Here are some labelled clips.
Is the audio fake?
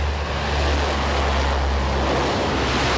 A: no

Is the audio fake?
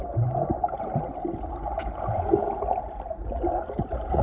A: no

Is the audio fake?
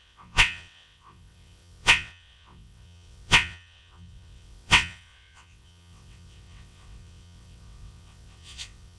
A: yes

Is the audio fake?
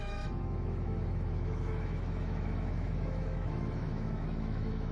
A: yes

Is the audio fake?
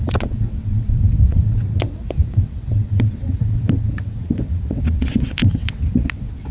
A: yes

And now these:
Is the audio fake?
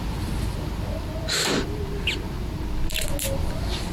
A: no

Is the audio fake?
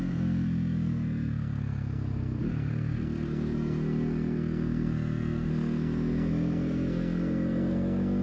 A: yes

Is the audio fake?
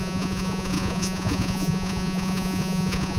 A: yes